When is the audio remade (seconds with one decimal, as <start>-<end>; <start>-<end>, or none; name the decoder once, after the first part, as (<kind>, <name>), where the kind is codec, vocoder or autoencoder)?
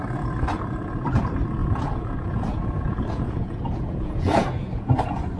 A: 1.6-4.8 (vocoder, Vocos)